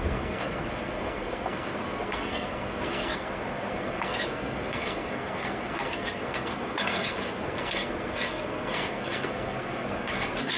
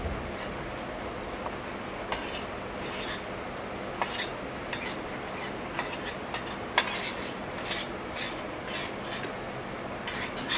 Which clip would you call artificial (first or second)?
first